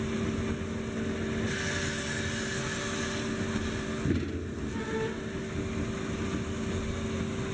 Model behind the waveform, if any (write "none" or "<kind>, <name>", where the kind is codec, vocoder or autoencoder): none